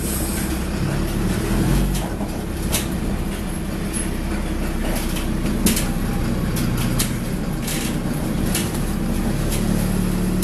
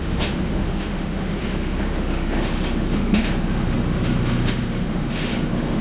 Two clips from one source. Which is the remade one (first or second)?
second